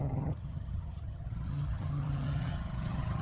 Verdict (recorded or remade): remade